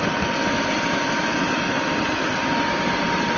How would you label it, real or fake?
real